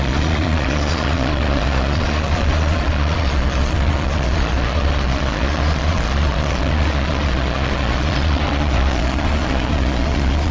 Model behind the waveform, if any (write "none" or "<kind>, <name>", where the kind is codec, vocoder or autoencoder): vocoder, Vocos